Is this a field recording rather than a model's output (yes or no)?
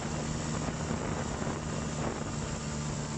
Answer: yes